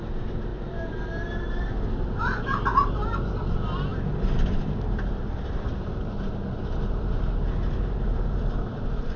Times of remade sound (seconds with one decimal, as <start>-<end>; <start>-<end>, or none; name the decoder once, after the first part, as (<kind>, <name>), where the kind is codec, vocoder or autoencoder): 0.0-9.2 (vocoder, BigVGAN v2)